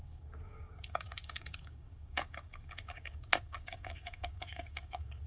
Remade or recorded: remade